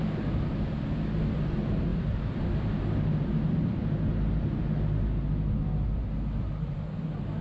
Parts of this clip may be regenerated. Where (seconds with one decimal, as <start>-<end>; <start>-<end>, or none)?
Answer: 1.9-3.8